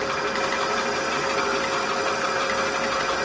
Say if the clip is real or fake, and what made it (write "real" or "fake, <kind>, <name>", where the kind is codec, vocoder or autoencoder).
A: real